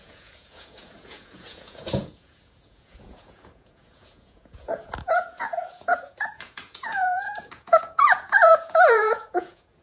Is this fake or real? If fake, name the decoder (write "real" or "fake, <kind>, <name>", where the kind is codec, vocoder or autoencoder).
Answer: fake, vocoder, Vocos